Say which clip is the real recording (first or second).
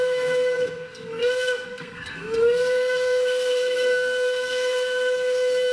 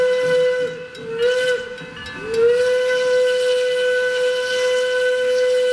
second